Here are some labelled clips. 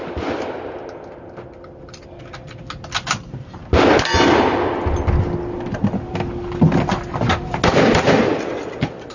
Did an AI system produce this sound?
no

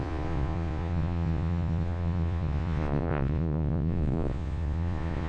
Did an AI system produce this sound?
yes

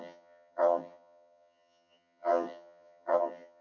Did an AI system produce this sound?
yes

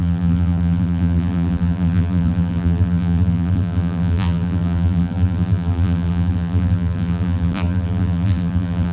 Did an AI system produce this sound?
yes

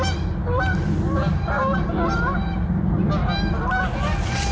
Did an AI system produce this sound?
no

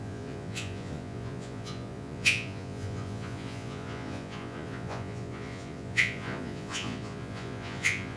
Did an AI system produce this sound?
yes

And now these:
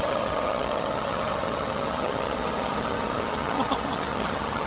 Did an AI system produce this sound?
yes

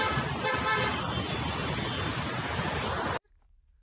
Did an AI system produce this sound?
no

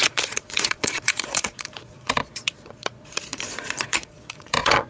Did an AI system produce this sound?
yes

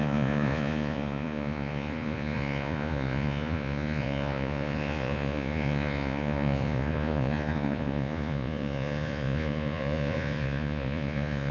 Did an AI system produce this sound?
yes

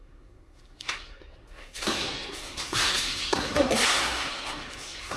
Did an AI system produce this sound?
yes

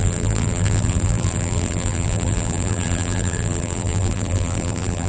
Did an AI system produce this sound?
yes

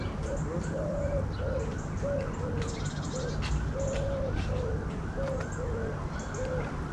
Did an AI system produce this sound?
no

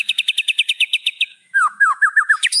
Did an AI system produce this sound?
yes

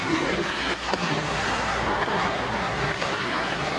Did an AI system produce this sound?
yes